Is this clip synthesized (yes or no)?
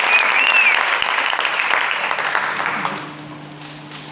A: no